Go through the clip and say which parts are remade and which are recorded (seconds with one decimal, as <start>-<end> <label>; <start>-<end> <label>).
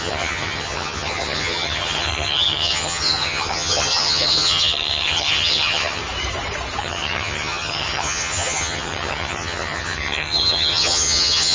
0.0-6.0 remade; 6.0-6.8 recorded; 6.8-11.5 remade